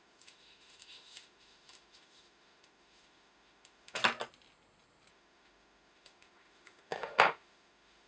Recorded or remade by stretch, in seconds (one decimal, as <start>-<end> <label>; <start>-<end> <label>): 0.0-4.0 remade; 4.0-5.1 recorded; 5.1-8.1 remade